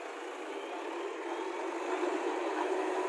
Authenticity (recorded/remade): recorded